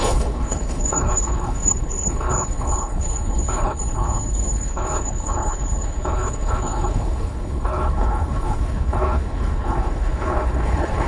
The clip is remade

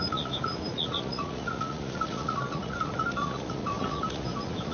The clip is remade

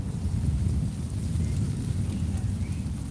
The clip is recorded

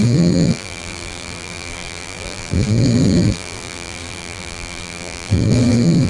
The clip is remade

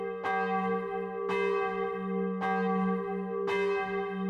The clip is recorded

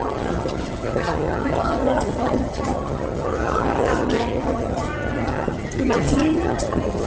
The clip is remade